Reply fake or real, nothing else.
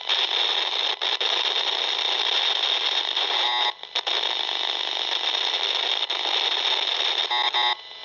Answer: real